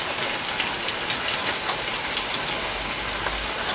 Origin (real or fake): real